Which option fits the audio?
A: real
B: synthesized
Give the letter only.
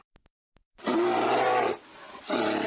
A